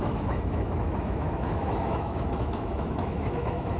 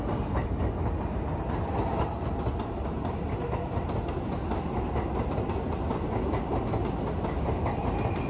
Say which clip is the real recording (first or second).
second